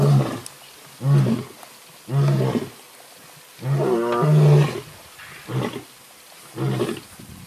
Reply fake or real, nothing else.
real